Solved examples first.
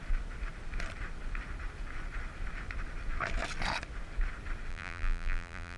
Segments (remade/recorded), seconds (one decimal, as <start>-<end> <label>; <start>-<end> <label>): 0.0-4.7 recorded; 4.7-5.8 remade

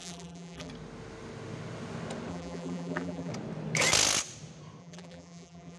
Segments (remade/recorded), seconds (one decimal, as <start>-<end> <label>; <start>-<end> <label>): 0.0-0.7 remade; 0.7-2.3 recorded; 2.3-3.3 remade; 3.3-4.8 recorded; 4.8-5.8 remade

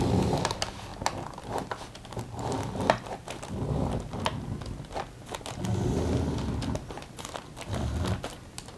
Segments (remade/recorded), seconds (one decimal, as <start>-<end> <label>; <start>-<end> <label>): 0.0-8.8 recorded

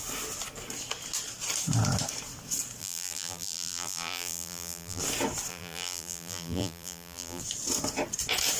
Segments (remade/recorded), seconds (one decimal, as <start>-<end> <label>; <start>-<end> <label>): 0.0-2.8 recorded; 2.8-5.0 remade; 5.0-5.5 recorded; 5.5-7.4 remade; 7.4-8.6 recorded

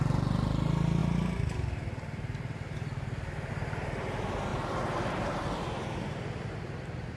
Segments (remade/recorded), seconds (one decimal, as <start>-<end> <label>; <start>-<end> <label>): 0.0-1.0 recorded; 1.0-3.5 remade; 3.5-4.5 recorded; 4.5-7.2 remade

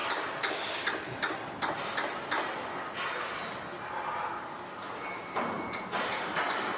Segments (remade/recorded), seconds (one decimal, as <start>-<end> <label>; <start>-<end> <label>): 0.0-6.8 recorded

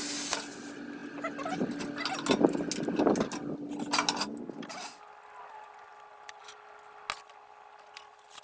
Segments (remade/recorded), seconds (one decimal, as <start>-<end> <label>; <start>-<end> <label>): 0.0-8.4 recorded